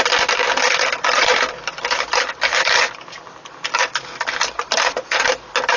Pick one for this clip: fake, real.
real